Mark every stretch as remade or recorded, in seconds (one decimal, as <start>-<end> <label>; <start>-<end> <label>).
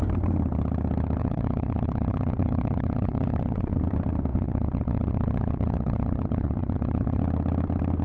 0.0-1.2 recorded; 1.2-3.8 remade; 3.8-4.3 recorded; 4.3-7.2 remade; 7.2-8.0 recorded